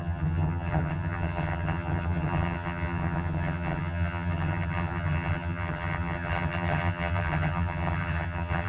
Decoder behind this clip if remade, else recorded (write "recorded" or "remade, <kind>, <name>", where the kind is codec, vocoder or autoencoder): remade, vocoder, HiFi-GAN